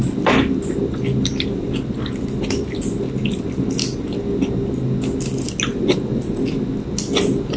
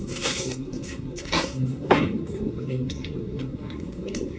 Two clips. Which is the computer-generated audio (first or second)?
second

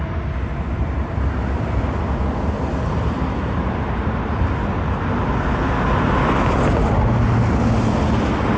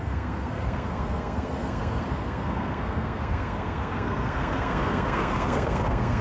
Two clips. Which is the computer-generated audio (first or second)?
second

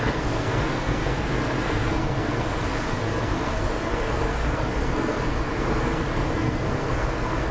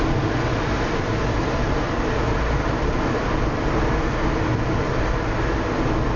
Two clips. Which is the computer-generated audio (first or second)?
first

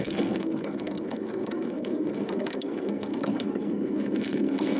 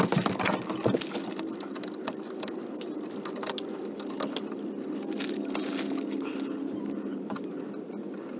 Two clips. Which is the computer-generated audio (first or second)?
first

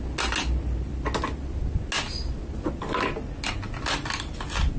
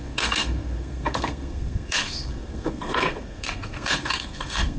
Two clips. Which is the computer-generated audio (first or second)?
second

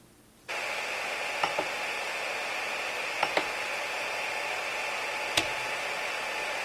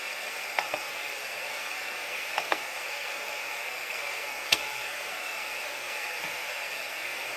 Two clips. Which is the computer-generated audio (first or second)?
second